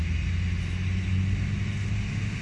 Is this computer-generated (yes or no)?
no